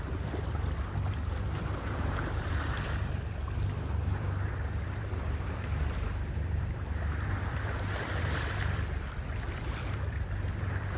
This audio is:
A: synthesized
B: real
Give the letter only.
A